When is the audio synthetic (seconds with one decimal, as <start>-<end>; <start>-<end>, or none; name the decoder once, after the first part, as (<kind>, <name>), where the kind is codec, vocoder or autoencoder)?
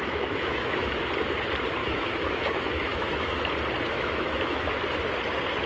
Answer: 0.0-0.9 (autoencoder, DAC-VAE); 1.8-3.4; 3.9-4.8